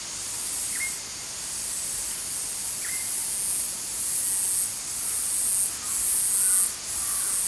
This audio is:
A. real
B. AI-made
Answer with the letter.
A